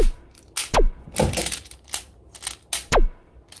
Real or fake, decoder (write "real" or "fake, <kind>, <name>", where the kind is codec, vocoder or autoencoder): real